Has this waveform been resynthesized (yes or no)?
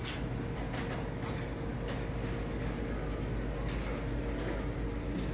no